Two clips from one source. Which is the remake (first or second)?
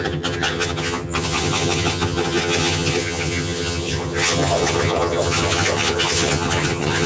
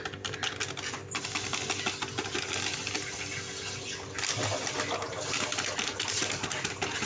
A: first